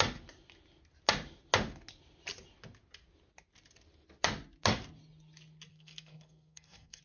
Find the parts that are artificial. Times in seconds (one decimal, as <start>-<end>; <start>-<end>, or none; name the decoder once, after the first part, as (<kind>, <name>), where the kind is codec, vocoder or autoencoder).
5.7-7.0 (codec, SNAC)

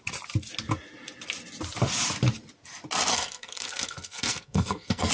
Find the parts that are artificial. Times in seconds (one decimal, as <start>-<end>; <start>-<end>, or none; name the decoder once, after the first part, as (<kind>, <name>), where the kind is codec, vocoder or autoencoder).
3.1-5.1 (codec, SNAC)

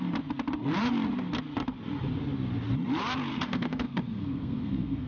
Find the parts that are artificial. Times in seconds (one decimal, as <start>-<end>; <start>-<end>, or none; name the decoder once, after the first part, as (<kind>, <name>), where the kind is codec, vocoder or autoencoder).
3.3-5.1 (codec, SNAC)

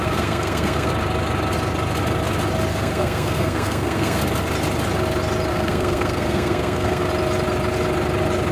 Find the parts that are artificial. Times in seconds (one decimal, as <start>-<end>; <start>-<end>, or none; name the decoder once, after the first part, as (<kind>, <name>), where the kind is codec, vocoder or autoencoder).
0.0-0.9 (codec, SNAC); 2.7-4.2; 5.5-7.1

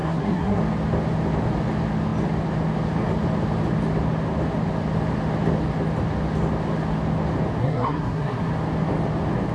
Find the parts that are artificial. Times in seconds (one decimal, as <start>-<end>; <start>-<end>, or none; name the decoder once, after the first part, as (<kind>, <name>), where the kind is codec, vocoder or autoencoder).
0.0-0.6 (codec, SNAC); 7.6-8.5

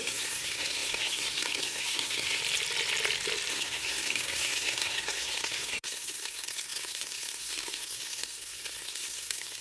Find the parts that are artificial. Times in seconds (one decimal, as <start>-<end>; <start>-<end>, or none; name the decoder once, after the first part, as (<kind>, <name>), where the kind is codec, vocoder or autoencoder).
0.0-2.4 (codec, SNAC); 3.5-9.6

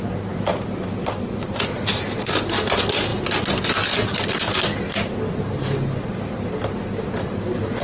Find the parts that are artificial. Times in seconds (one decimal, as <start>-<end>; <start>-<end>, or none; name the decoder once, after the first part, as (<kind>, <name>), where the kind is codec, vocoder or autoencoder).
none

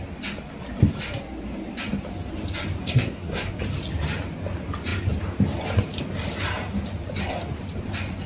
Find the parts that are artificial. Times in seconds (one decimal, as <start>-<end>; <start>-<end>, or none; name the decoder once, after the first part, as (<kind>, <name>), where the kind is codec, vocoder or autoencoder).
2.8-3.6 (codec, SNAC)